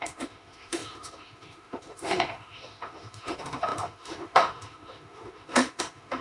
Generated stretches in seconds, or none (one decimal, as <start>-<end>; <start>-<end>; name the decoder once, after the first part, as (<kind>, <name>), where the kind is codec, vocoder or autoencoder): 0.0-6.2 (autoencoder, DAC-VAE)